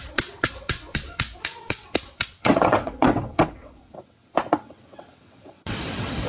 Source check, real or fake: fake